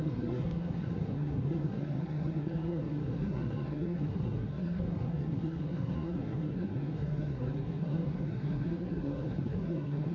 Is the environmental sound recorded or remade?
remade